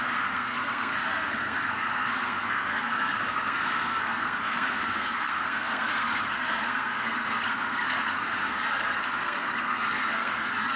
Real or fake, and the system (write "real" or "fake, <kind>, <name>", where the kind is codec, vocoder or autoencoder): fake, codec, SNAC